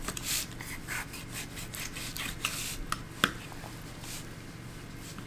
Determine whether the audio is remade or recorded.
recorded